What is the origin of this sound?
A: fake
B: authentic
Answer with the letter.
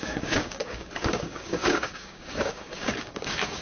A